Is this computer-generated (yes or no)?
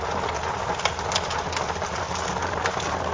no